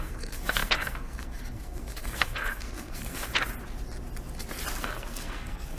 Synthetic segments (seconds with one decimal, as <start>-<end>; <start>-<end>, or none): 0.0-3.3; 4.8-5.8